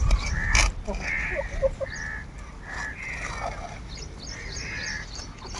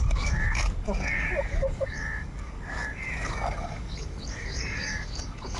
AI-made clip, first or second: second